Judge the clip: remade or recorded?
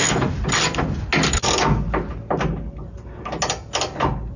recorded